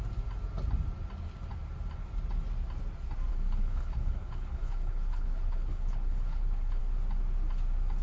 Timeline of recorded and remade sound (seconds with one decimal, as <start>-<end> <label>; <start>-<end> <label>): 0.0-3.3 recorded; 3.3-6.8 remade; 6.8-8.0 recorded